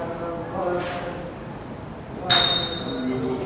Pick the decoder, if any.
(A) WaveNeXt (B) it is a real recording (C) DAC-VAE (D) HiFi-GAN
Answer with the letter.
B